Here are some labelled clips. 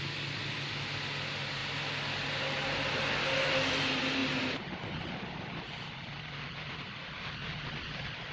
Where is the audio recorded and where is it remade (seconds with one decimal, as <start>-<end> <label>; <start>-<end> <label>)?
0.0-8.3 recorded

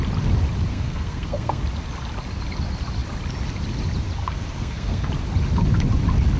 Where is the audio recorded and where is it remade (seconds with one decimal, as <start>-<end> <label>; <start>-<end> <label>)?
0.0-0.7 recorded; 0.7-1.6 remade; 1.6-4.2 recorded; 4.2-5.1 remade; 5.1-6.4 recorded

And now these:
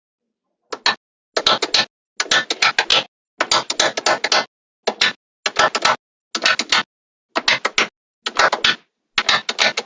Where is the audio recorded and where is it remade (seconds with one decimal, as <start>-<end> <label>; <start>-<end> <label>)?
0.0-9.8 recorded

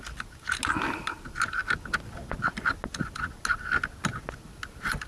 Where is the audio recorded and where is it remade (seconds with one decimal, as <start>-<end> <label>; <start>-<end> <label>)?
0.0-5.1 recorded

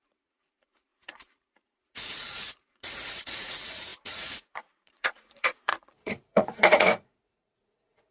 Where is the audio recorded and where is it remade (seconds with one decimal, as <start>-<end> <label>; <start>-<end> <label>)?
0.0-8.1 remade

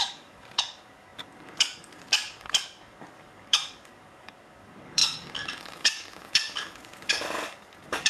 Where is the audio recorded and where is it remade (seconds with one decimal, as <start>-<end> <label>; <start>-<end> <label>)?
0.0-8.1 remade